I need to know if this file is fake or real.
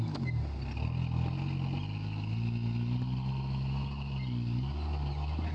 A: real